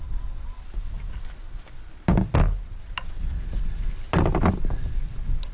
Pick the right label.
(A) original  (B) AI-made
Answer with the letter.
A